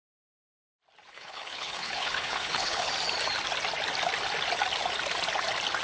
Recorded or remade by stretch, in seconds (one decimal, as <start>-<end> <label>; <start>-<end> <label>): 0.0-1.1 recorded; 1.1-2.9 remade; 2.9-5.8 recorded